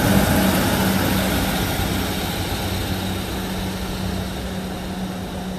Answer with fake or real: real